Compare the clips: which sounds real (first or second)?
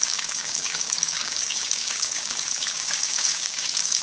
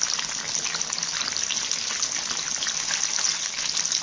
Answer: second